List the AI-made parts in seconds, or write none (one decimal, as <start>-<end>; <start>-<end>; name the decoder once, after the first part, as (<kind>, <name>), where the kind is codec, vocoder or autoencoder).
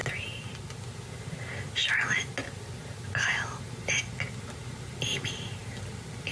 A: none